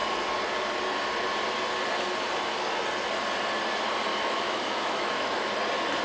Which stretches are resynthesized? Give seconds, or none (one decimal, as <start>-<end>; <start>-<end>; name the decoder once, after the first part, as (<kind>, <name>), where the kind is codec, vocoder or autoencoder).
4.1-5.5 (autoencoder, DAC-VAE)